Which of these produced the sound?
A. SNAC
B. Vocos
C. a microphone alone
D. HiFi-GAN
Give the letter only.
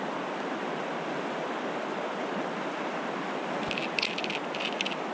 C